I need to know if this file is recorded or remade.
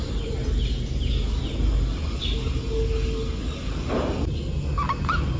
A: recorded